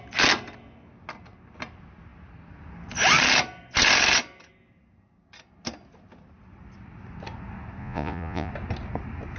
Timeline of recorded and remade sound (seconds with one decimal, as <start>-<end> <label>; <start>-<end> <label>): 0.0-7.8 recorded; 7.8-8.5 remade; 8.5-9.4 recorded